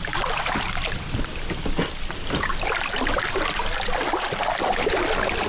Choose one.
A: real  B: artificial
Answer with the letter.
A